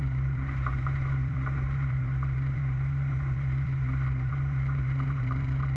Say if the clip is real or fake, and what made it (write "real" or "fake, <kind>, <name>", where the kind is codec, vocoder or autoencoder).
fake, vocoder, BigVGAN v2